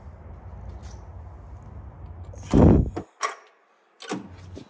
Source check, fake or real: real